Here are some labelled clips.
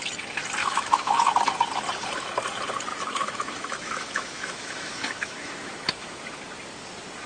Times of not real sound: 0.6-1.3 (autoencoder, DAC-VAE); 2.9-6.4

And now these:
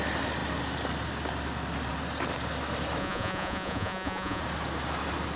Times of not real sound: 3.0-4.4 (vocoder, Vocos)

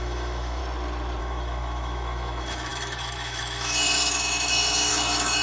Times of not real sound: 0.0-0.6 (autoencoder, DAC-VAE); 1.2-5.4

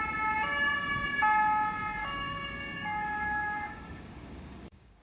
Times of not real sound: 2.0-5.0 (codec, DAC)

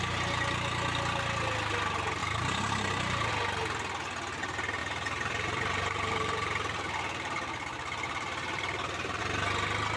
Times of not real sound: 2.2-3.3 (vocoder, BigVGAN v2); 4.8-9.2

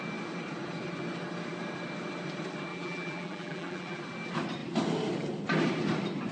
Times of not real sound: 2.7-4.0 (vocoder, BigVGAN v2)